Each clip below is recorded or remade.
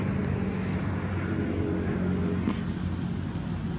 recorded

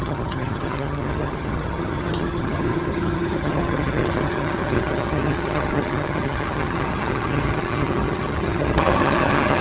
remade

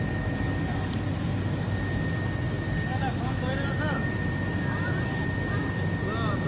recorded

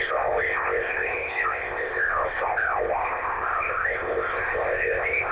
remade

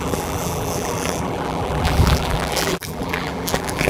remade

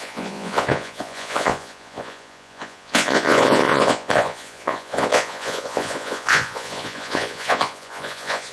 remade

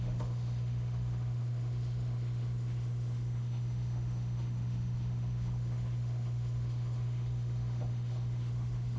remade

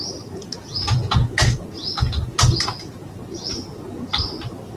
recorded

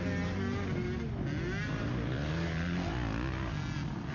recorded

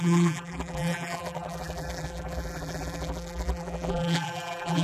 remade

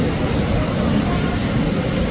remade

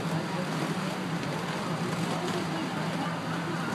recorded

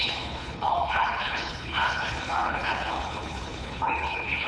remade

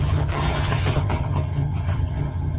remade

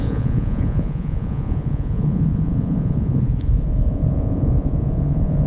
remade